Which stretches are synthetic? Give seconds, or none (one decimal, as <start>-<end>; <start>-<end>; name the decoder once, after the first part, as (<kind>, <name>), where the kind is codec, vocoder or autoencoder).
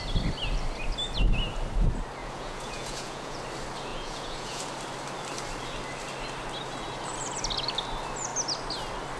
2.2-3.4 (vocoder, Vocos); 3.9-4.6